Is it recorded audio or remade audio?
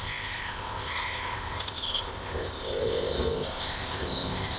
remade